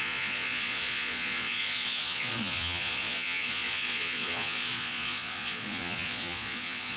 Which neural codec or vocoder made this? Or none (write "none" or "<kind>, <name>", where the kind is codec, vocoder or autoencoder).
vocoder, Vocos